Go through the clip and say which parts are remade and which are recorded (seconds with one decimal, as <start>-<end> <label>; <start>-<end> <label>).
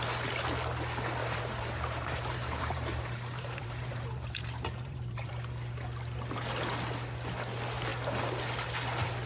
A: 0.0-1.2 recorded; 1.2-5.3 remade; 5.3-9.3 recorded